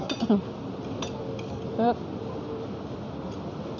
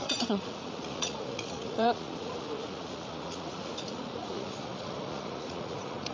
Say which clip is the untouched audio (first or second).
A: first